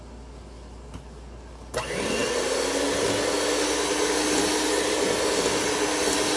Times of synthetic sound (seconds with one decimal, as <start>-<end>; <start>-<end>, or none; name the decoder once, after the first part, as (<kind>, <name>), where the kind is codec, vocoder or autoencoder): none